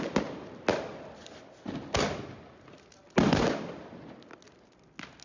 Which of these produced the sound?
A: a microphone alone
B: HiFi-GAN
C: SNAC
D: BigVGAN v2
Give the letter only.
A